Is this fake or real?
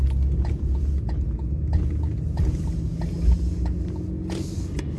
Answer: real